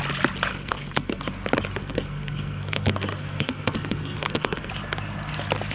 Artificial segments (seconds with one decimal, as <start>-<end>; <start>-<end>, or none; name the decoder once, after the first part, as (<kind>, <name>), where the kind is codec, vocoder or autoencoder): 0.5-1.2 (codec, SNAC); 1.8-4.7